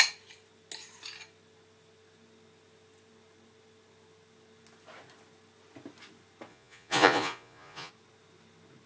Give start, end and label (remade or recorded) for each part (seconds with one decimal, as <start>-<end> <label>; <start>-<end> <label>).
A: 0.0-6.5 recorded; 6.5-7.9 remade; 7.9-8.9 recorded